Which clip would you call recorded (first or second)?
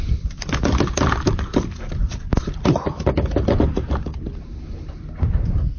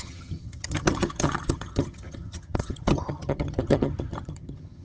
first